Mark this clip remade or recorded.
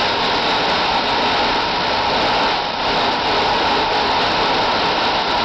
recorded